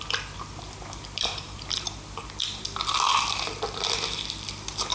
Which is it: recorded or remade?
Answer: remade